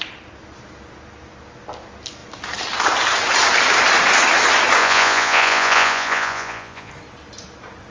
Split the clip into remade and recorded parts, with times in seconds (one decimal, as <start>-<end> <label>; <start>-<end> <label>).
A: 0.0-4.8 recorded; 4.8-6.9 remade; 6.9-7.9 recorded